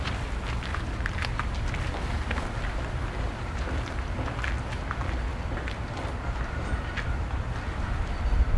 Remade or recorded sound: recorded